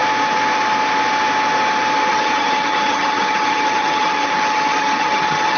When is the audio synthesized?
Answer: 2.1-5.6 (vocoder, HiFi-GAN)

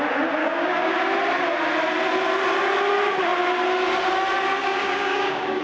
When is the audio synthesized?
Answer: 0.4-0.9 (codec, DAC); 4.6-5.6

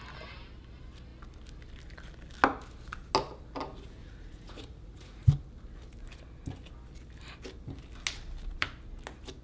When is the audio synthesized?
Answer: 4.0-5.3 (vocoder, Vocos)

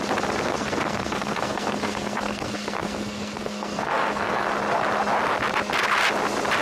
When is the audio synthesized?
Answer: 0.5-4.5 (codec, SNAC)

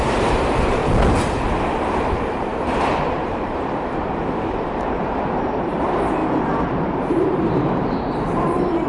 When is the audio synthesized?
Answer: 0.0-0.8 (vocoder, BigVGAN v2); 1.9-2.5; 3.0-6.2; 6.7-8.9

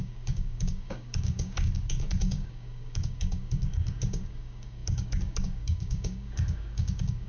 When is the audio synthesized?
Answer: 0.0-7.3 (codec, DAC)

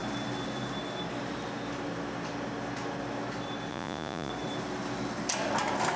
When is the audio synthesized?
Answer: 3.7-4.3 (vocoder, Vocos)